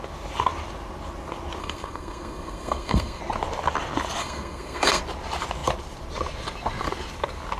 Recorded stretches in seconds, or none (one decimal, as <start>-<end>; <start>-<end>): 0.0-1.6; 3.2-4.2; 5.0-7.6